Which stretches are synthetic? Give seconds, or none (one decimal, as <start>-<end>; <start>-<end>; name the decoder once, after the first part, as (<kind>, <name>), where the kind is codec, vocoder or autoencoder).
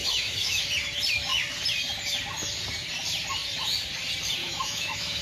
0.0-0.6 (autoencoder, DAC-VAE); 4.4-5.2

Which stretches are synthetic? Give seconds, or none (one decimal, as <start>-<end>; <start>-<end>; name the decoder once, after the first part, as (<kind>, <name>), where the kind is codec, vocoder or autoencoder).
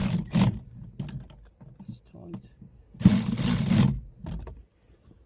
none